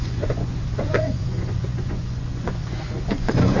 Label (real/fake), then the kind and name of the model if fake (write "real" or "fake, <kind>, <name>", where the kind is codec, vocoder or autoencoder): fake, vocoder, Vocos